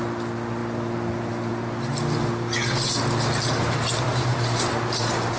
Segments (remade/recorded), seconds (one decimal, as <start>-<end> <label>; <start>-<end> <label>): 0.0-5.4 recorded